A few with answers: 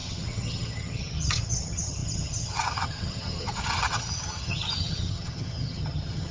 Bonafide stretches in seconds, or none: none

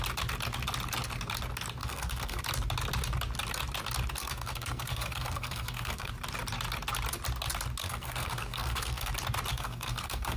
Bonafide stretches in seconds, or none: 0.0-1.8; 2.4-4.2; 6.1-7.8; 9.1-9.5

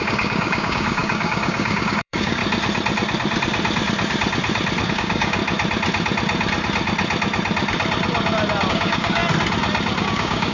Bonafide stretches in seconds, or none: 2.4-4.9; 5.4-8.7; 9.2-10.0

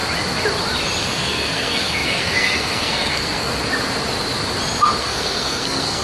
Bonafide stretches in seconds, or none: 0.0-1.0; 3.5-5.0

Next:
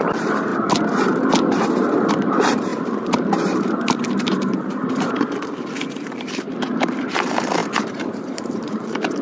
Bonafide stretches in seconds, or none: 0.5-2.1; 7.6-8.1

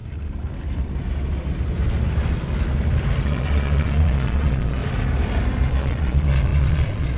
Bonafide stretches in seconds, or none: 0.0-3.2; 4.8-5.7